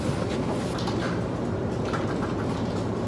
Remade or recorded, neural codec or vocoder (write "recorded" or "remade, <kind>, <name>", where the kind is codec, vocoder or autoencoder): recorded